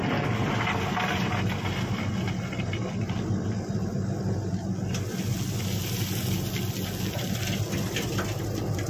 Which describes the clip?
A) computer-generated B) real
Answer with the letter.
B